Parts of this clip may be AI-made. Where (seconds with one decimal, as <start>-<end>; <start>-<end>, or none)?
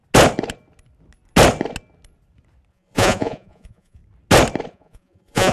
2.7-4.0; 4.7-5.5